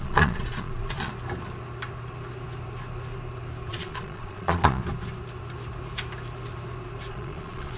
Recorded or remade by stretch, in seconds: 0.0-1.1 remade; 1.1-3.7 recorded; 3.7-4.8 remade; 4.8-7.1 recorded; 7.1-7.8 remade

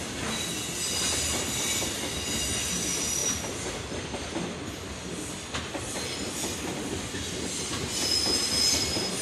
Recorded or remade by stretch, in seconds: 0.0-9.2 recorded

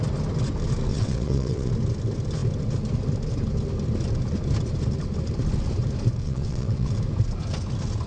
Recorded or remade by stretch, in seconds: 0.0-0.9 recorded; 0.9-1.7 remade; 1.7-6.2 recorded; 6.2-6.9 remade; 6.9-8.1 recorded

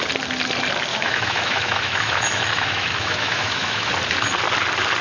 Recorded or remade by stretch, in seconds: 0.0-0.9 recorded; 0.9-3.9 remade; 3.9-5.0 recorded

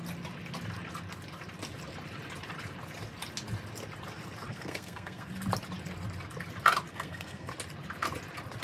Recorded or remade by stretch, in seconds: 0.0-4.5 recorded; 4.5-5.3 remade; 5.3-6.9 recorded; 6.9-7.5 remade; 7.5-8.6 recorded

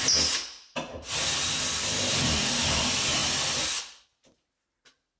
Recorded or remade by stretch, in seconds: 0.0-5.2 recorded